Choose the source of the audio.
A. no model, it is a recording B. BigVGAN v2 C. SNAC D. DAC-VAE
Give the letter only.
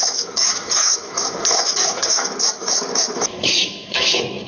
D